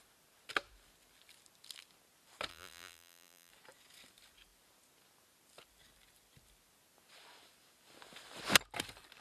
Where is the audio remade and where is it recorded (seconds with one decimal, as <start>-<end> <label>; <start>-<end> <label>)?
0.0-2.5 recorded; 2.5-3.5 remade; 3.5-9.2 recorded